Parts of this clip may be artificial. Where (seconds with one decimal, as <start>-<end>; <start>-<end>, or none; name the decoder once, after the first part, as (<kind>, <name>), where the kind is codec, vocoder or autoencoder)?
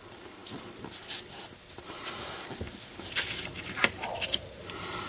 none